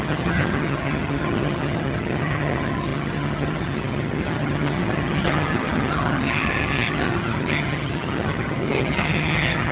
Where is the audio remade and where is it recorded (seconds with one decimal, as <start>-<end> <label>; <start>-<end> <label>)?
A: 0.0-9.7 remade